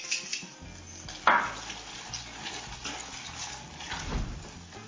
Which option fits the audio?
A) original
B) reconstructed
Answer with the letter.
A